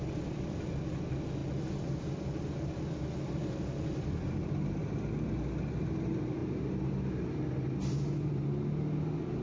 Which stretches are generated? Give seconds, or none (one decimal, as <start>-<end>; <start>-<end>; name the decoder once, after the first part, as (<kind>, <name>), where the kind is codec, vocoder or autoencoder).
none